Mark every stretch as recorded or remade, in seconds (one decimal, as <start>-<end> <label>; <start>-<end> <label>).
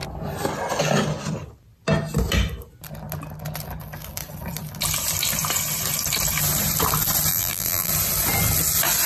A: 0.0-7.3 recorded; 7.3-7.9 remade; 7.9-9.1 recorded